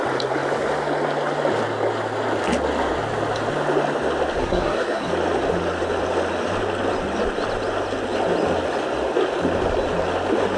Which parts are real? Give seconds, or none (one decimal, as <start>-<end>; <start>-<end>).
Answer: 0.0-4.4; 5.1-10.6